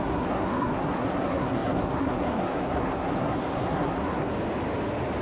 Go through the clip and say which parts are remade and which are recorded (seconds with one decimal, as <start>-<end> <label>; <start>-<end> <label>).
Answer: 0.0-4.3 remade; 4.3-5.2 recorded

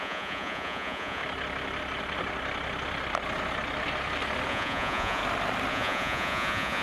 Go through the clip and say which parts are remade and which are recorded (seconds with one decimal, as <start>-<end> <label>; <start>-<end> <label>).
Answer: 0.0-1.2 remade; 1.2-4.5 recorded; 4.5-5.2 remade; 5.2-5.7 recorded; 5.7-6.8 remade

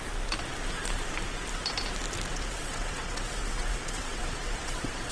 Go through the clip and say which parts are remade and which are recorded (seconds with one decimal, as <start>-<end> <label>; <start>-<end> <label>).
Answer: 0.0-2.3 recorded; 2.3-5.1 remade

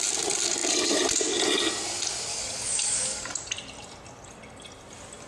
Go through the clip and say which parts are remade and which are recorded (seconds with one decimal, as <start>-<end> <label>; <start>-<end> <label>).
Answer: 0.0-2.3 recorded; 2.3-3.3 remade; 3.3-5.3 recorded

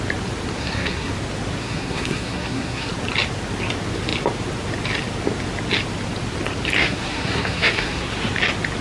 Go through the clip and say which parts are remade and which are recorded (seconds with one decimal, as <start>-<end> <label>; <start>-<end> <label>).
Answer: 0.0-0.6 recorded; 0.6-1.1 remade; 1.1-1.6 recorded; 1.6-2.9 remade; 2.9-6.8 recorded; 6.8-8.1 remade; 8.1-8.8 recorded

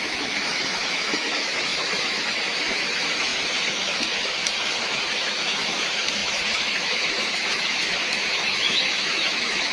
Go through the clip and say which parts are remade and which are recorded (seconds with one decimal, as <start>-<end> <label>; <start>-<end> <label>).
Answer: 0.0-9.7 remade

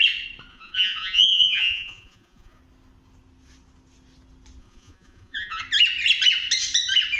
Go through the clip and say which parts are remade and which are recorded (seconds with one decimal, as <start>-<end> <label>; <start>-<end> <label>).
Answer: 0.0-0.5 recorded; 0.5-2.6 remade; 2.6-4.6 recorded; 4.6-5.6 remade; 5.6-7.2 recorded

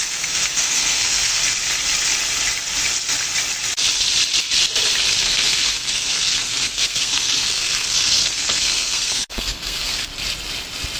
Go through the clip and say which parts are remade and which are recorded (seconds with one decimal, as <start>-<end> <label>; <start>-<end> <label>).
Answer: 0.0-1.4 remade; 1.4-5.2 recorded; 5.2-10.1 remade; 10.1-11.0 recorded